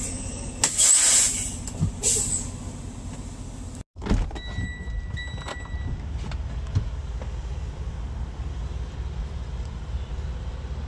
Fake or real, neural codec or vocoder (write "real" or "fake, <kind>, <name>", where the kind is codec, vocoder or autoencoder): real